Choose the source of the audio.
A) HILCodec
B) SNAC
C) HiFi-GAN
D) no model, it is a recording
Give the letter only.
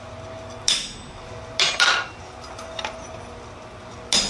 D